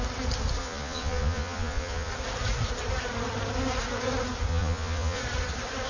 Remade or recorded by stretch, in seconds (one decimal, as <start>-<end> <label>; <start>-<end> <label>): 0.0-0.6 recorded; 0.6-2.1 remade; 2.1-4.5 recorded; 4.5-5.2 remade; 5.2-5.9 recorded